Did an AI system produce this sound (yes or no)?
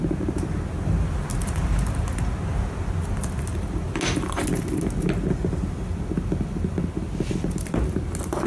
no